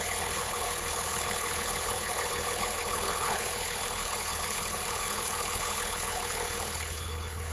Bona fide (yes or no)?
no